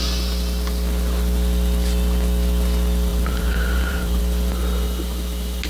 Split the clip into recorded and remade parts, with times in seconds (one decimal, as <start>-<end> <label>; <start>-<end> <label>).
0.0-3.1 recorded; 3.1-4.2 remade; 4.2-5.7 recorded

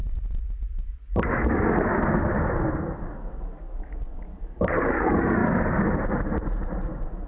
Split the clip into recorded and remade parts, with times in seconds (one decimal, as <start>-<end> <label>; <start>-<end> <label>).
0.0-4.4 recorded; 4.4-5.4 remade; 5.4-6.1 recorded; 6.1-7.3 remade

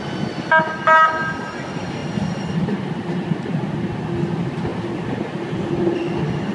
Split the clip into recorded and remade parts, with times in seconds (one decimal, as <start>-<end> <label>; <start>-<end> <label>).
0.0-2.0 recorded; 2.0-4.0 remade; 4.0-4.7 recorded; 4.7-6.0 remade; 6.0-6.5 recorded

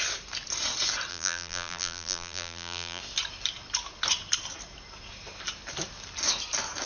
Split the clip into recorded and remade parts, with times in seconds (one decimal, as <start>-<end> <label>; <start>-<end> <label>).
0.0-1.1 recorded; 1.1-3.0 remade; 3.0-6.9 recorded

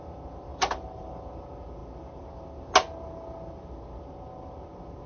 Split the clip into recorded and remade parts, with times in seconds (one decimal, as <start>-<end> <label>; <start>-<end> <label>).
0.0-0.5 recorded; 0.5-1.1 remade; 1.1-5.1 recorded

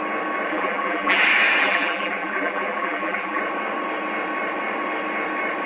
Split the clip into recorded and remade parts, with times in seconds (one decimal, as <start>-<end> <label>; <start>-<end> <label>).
0.0-0.5 recorded; 0.5-1.2 remade; 1.2-1.6 recorded; 1.6-3.4 remade; 3.4-5.7 recorded